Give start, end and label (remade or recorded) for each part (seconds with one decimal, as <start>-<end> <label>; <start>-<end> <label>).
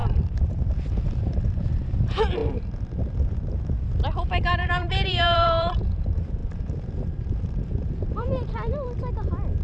0.0-2.4 remade; 2.4-3.8 recorded; 3.8-9.6 remade